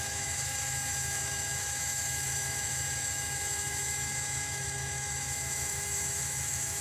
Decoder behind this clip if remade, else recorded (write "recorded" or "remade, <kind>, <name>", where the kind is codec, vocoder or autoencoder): remade, autoencoder, DAC-VAE